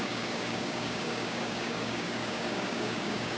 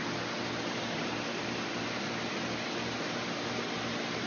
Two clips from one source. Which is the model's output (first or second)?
first